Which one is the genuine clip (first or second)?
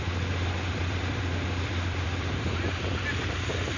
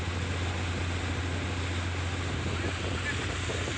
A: second